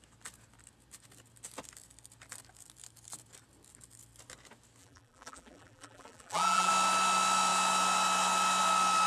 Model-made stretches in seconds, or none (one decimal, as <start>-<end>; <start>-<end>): 4.8-6.7